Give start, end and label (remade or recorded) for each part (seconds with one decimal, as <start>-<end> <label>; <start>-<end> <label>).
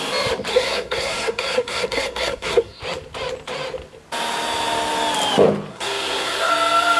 0.0-0.5 recorded; 0.5-2.8 remade; 2.8-5.7 recorded; 5.7-6.5 remade; 6.5-7.0 recorded